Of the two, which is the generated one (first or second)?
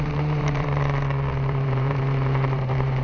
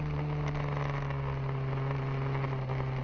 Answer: first